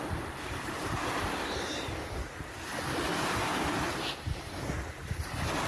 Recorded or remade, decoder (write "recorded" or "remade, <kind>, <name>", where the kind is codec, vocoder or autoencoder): recorded